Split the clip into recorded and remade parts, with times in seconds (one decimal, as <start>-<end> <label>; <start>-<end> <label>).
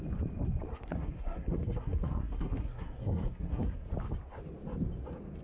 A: 0.0-0.7 recorded; 0.7-3.9 remade; 3.9-5.4 recorded